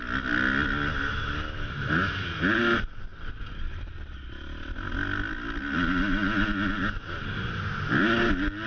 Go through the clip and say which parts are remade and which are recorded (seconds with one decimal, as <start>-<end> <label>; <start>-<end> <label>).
0.0-8.7 recorded

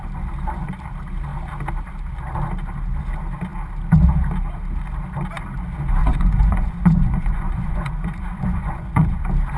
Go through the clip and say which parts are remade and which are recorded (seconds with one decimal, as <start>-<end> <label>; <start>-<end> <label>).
0.0-6.0 recorded; 6.0-9.2 remade; 9.2-9.6 recorded

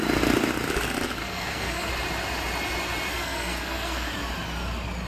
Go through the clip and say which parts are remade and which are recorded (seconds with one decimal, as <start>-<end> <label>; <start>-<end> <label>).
0.0-1.2 recorded; 1.2-1.9 remade; 1.9-3.1 recorded; 3.1-4.1 remade; 4.1-5.1 recorded

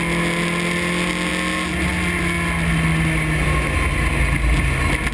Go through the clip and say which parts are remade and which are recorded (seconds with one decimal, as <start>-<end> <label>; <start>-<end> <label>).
0.0-5.1 recorded

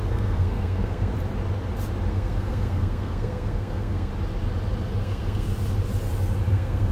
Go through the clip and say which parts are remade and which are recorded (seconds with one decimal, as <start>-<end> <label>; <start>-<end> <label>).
0.0-1.1 remade; 1.1-2.1 recorded; 2.1-4.1 remade; 4.1-5.0 recorded; 5.0-5.5 remade; 5.5-6.5 recorded; 6.5-6.9 remade

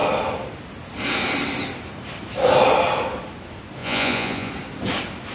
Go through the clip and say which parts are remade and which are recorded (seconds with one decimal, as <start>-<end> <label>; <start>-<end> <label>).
0.0-3.8 recorded; 3.8-4.5 remade; 4.5-5.3 recorded

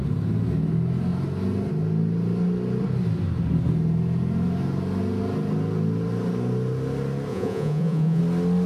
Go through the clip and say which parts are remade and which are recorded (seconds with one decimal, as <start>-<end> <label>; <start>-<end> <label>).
0.0-7.3 recorded; 7.3-8.2 remade; 8.2-8.7 recorded

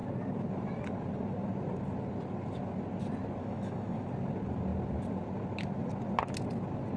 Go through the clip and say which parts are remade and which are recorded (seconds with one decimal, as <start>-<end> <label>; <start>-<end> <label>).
0.0-3.4 recorded; 3.4-4.1 remade; 4.1-7.0 recorded